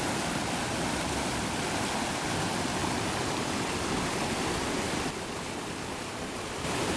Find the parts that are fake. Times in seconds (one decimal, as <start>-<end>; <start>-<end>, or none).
none